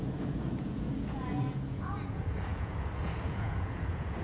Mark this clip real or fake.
fake